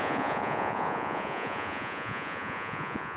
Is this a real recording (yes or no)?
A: no